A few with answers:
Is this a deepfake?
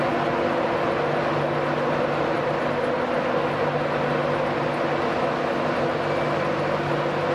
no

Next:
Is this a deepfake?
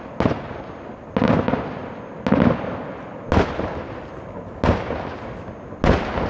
no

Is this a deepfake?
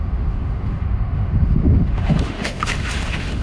yes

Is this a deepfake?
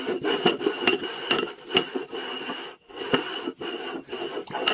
no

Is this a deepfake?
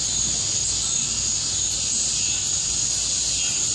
no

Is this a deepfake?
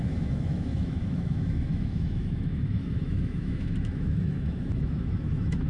yes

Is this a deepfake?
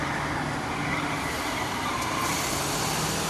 no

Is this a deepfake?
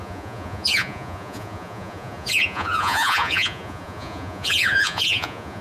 yes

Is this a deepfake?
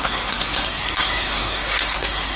yes